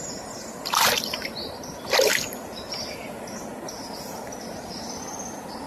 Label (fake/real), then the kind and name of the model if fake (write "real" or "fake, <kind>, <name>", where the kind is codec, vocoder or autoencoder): real